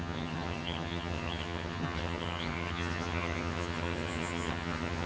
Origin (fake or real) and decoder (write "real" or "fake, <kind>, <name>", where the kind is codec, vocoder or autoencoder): fake, vocoder, HiFi-GAN